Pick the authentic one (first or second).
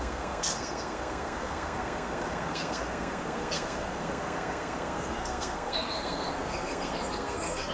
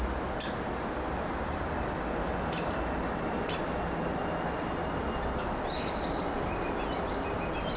second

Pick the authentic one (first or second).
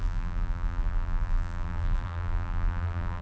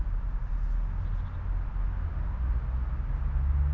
second